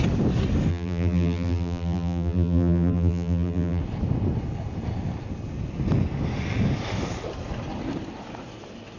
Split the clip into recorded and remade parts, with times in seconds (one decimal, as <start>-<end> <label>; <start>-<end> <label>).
0.0-0.7 recorded; 0.7-3.8 remade; 3.8-9.0 recorded